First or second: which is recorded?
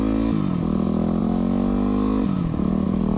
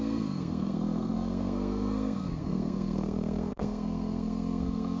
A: first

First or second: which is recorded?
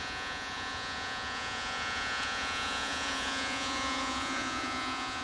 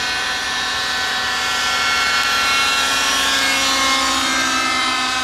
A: second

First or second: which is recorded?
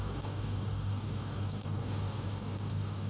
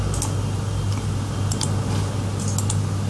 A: second